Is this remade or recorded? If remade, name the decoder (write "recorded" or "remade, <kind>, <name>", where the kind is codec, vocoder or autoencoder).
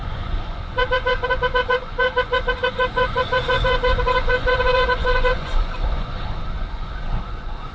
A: remade, vocoder, Vocos